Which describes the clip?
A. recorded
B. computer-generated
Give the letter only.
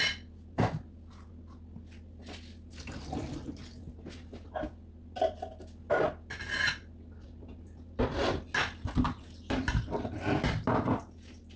A